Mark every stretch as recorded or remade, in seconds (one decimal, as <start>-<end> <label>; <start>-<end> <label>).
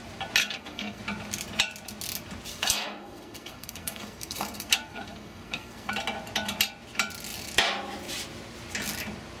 0.0-0.4 recorded; 0.4-1.0 remade; 1.0-2.5 recorded; 2.5-5.9 remade; 5.9-9.4 recorded